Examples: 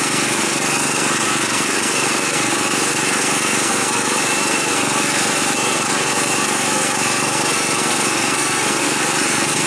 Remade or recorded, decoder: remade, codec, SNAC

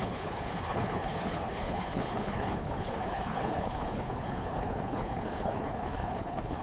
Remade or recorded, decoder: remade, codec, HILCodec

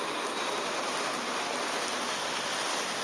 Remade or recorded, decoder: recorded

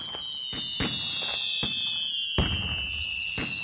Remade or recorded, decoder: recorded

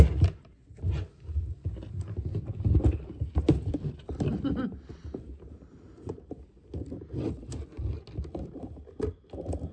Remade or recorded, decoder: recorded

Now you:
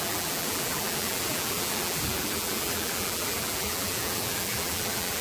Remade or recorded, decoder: remade, vocoder, BigVGAN v2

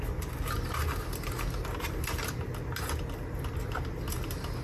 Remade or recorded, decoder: recorded